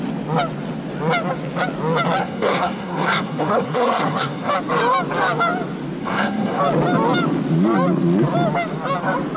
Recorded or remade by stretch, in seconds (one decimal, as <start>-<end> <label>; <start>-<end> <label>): 0.0-2.2 recorded; 2.2-4.5 remade; 4.5-6.0 recorded; 6.0-6.6 remade; 6.6-9.4 recorded